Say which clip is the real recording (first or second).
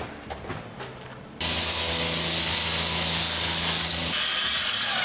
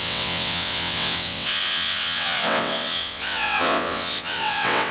first